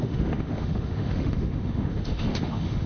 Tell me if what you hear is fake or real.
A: fake